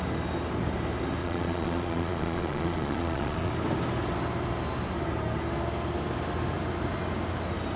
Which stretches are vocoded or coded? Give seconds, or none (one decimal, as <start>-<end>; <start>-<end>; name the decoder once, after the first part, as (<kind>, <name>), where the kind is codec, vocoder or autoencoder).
1.2-3.5 (vocoder, Vocos)